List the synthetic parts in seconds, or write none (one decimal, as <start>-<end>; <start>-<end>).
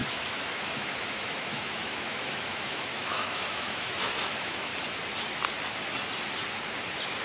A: 0.0-4.7